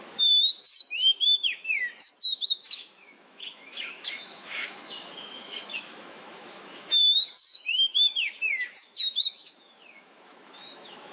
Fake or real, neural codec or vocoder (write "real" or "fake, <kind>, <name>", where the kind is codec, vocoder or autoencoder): fake, autoencoder, DAC-VAE